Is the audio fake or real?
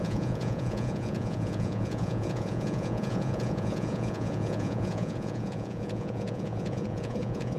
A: fake